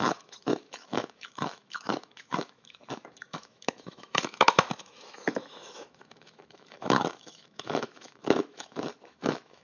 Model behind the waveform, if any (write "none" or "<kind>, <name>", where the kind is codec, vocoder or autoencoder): autoencoder, DAC-VAE